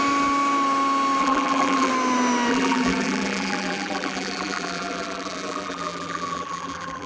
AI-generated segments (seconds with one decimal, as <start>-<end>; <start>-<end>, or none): 1.2-1.9; 2.5-7.1